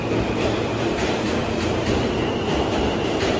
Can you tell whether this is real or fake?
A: real